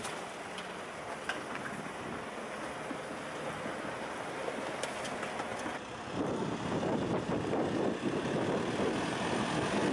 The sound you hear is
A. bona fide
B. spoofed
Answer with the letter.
A